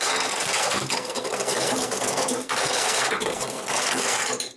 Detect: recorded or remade remade